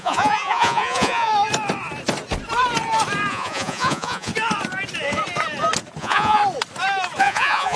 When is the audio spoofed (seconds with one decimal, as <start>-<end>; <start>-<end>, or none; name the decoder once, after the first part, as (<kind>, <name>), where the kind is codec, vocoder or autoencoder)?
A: 0.0-1.3 (vocoder, Vocos); 3.3-4.3; 6.0-6.4; 7.2-7.8